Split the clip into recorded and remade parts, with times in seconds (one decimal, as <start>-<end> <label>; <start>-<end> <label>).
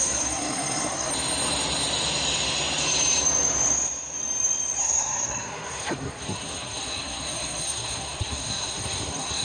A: 0.0-1.1 remade; 1.1-4.8 recorded; 4.8-9.4 remade